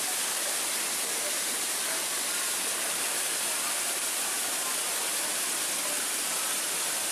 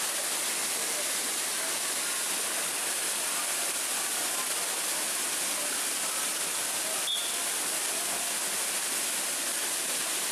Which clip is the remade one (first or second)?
first